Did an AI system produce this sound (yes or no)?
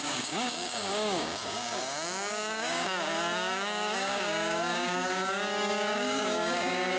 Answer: yes